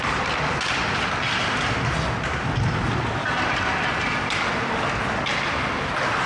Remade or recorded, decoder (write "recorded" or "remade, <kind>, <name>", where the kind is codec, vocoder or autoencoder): recorded